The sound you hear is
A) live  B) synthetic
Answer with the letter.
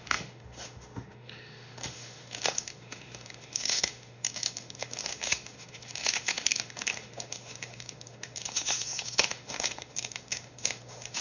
B